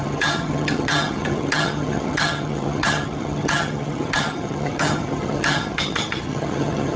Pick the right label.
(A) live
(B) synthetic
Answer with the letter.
B